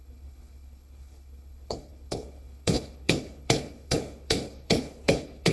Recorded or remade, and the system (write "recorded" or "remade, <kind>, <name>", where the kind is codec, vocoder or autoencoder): remade, codec, HILCodec